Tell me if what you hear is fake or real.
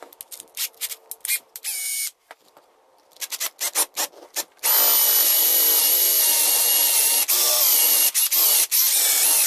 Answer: real